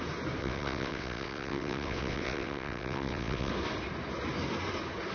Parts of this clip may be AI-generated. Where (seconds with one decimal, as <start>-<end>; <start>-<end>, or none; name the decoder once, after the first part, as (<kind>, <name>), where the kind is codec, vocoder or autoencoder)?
0.4-3.5 (vocoder, WaveNeXt)